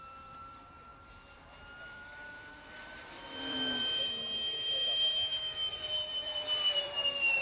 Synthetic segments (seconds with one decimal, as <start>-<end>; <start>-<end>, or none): 0.0-4.1; 5.7-7.4